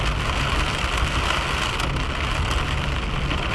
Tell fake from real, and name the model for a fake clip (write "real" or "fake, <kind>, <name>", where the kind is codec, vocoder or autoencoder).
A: real